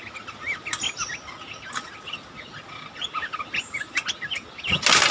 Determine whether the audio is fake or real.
real